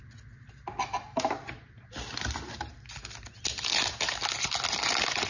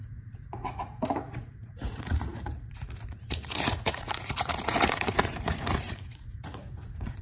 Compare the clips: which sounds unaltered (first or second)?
first